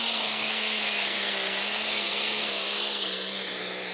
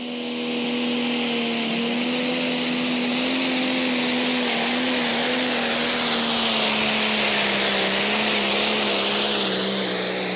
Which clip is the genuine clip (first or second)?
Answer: second